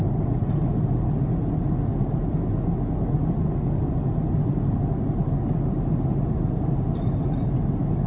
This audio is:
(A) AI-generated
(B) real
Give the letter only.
B